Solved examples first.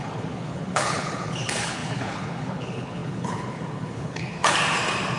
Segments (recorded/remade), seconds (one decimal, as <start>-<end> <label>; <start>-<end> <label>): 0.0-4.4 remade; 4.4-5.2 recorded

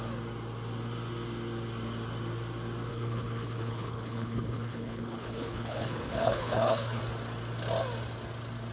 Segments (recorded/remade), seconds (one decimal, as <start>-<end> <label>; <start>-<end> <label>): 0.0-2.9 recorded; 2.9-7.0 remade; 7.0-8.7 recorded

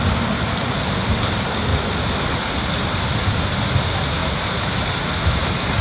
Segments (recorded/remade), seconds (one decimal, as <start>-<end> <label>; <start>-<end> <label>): 0.0-5.8 recorded